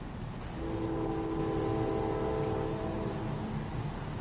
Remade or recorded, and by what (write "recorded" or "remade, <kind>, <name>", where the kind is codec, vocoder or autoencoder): recorded